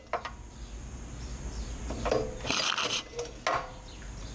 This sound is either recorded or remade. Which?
recorded